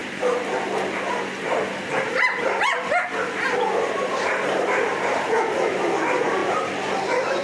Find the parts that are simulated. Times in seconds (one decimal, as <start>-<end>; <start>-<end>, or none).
none